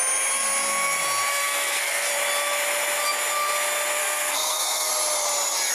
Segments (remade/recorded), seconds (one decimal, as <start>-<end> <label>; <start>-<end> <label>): 0.0-1.3 recorded; 1.3-2.1 remade; 2.1-4.0 recorded; 4.0-4.9 remade; 4.9-5.7 recorded